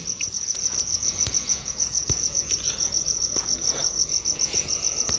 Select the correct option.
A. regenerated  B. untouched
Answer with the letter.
A